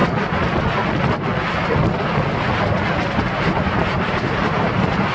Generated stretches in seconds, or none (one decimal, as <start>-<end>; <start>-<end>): 3.1-5.1